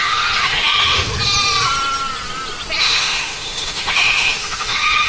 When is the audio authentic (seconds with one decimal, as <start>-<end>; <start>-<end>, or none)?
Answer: 1.1-2.8